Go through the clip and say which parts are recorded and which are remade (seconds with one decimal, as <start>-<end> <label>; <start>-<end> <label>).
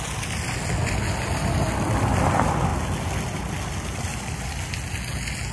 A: 0.0-5.5 recorded